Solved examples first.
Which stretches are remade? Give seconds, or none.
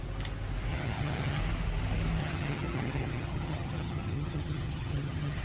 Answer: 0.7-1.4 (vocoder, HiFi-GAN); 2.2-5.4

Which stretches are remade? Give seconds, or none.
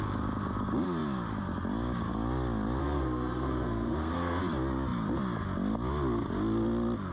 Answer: 2.8-4.4 (codec, SNAC)